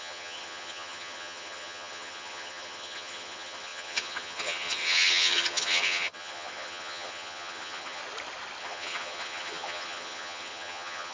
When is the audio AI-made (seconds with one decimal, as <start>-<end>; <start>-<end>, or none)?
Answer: 0.0-8.0; 8.6-11.1